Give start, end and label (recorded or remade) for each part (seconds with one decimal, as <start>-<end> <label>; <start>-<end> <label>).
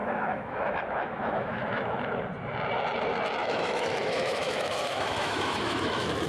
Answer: 0.0-2.2 remade; 2.2-3.4 recorded; 3.4-6.3 remade